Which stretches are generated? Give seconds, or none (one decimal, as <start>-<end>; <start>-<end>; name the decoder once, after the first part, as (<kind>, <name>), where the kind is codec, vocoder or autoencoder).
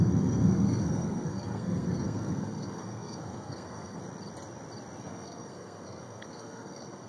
0.0-4.0 (codec, SNAC); 5.0-7.1